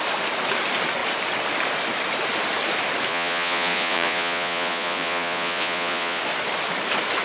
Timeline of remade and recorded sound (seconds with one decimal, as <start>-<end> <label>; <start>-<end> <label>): 0.0-3.1 recorded; 3.1-6.2 remade; 6.2-7.2 recorded